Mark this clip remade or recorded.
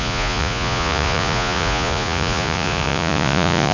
remade